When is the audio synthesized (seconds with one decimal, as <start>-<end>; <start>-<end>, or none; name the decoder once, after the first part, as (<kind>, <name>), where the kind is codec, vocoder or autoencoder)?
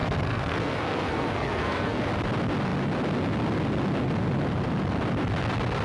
0.0-2.0 (codec, SNAC)